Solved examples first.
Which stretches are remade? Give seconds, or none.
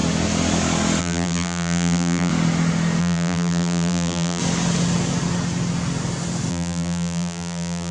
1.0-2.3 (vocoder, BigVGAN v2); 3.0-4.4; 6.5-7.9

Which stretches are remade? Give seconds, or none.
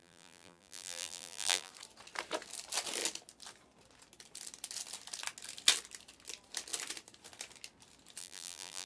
0.0-1.7 (vocoder, BigVGAN v2); 8.2-8.9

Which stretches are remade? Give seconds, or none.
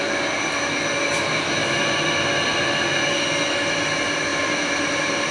4.3-5.3 (vocoder, BigVGAN v2)